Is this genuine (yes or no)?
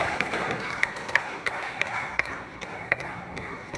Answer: no